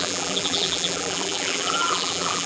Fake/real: fake